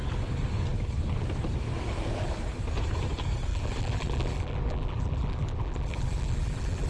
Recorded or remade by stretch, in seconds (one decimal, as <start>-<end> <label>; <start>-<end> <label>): 0.0-3.5 recorded; 3.5-6.9 remade